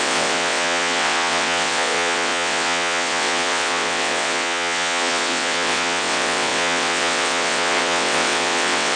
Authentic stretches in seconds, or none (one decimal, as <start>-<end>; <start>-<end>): none